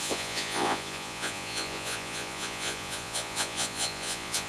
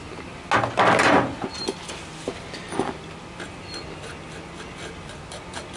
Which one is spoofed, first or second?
first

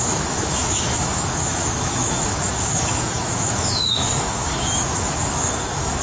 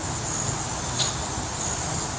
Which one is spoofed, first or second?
first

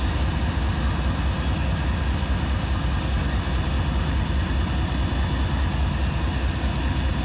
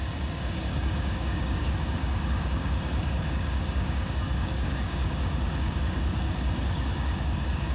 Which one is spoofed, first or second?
second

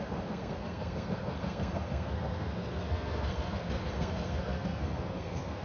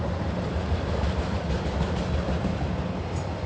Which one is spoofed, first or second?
first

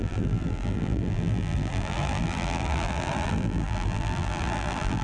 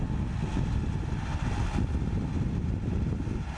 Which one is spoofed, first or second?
first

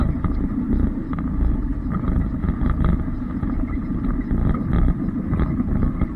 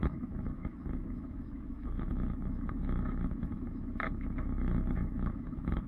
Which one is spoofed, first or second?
second